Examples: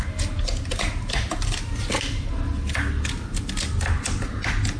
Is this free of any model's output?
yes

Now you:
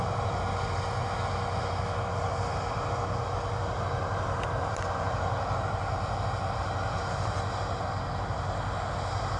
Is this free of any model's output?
yes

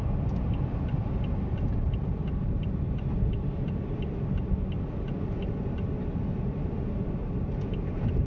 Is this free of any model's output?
yes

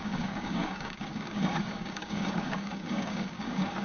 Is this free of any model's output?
no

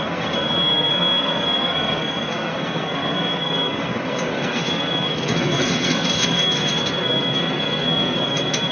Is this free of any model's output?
no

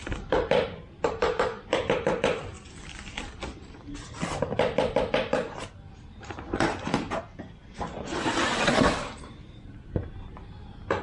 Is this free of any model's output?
no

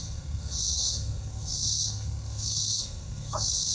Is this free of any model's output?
no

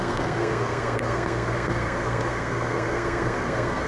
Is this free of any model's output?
no